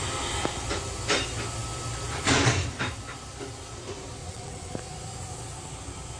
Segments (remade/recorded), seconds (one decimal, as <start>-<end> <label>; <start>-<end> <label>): 0.0-4.2 recorded; 4.2-4.7 remade; 4.7-6.2 recorded